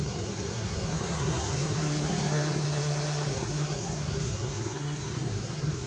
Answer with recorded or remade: remade